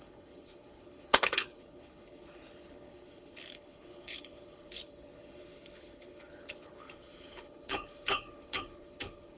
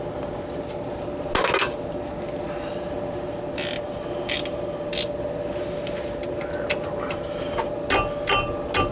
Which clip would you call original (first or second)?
second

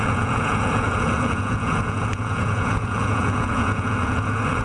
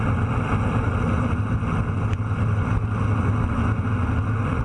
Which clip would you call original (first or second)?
second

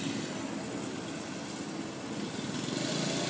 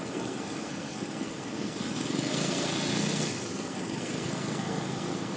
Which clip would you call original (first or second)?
first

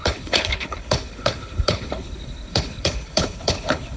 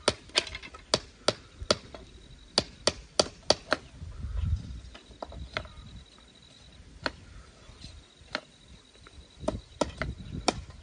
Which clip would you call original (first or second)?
second